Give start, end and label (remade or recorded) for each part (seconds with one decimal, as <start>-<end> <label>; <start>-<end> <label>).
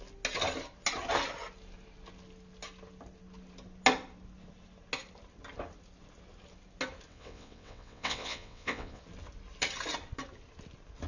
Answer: 0.0-7.1 recorded; 7.1-9.0 remade; 9.0-11.1 recorded